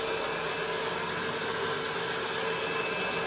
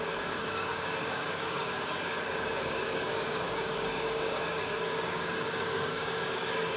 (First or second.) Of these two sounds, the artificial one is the second